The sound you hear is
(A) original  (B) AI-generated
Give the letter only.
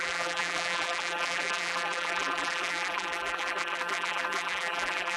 B